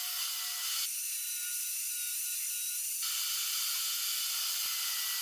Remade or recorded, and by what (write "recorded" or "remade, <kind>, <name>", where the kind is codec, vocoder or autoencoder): recorded